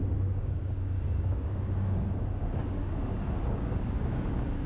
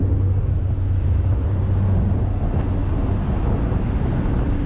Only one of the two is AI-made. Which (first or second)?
first